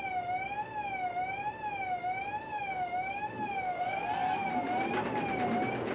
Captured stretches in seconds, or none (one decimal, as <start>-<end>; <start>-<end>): 0.0-2.5; 3.8-5.9